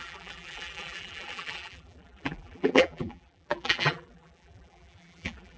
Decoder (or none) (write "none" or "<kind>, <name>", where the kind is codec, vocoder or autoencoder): vocoder, BigVGAN v2